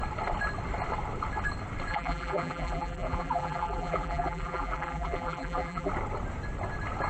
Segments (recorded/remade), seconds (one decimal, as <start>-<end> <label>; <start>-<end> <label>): 0.0-1.9 recorded; 1.9-5.9 remade; 5.9-7.1 recorded